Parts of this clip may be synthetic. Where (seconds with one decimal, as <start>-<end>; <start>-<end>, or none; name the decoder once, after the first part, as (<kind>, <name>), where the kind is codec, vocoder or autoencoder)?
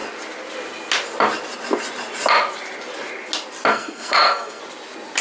3.7-4.6 (codec, SNAC)